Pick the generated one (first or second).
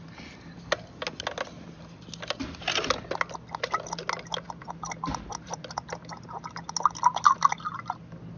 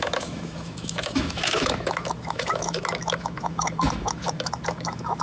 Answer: second